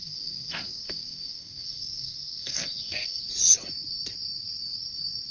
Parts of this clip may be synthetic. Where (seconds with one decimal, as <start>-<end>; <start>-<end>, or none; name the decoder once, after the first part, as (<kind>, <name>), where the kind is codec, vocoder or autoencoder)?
0.0-3.2 (codec, SNAC)